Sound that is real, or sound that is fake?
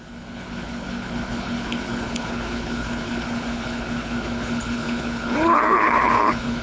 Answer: fake